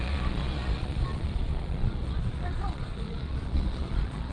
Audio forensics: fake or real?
fake